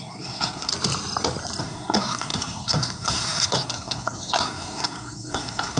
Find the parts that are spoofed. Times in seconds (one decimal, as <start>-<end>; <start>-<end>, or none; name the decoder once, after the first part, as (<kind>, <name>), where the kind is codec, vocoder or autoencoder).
0.0-0.7 (codec, SNAC); 1.6-5.8